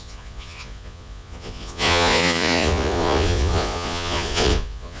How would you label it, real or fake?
fake